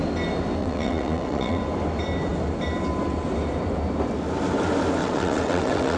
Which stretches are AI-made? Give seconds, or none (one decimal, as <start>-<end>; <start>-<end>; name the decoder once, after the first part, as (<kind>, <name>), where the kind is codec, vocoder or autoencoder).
0.6-1.6 (vocoder, WaveNeXt); 5.0-6.0